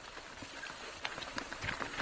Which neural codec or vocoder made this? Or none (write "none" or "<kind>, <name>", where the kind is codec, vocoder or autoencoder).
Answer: none